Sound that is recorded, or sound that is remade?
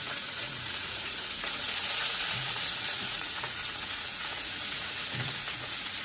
remade